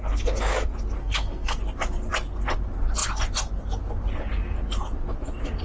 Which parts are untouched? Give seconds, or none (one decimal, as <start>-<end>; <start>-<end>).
0.0-1.0; 1.6-5.6